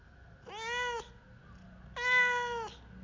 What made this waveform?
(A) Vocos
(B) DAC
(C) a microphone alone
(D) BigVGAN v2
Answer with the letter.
C